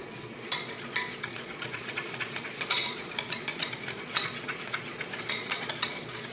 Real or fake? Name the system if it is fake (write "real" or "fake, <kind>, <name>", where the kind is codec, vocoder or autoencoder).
fake, vocoder, Vocos